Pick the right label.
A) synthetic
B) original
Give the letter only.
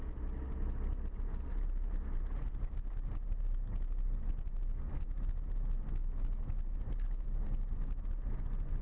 B